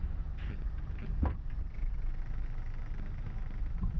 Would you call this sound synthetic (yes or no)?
no